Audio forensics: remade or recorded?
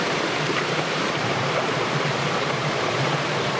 remade